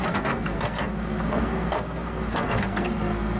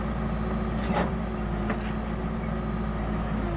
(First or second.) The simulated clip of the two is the first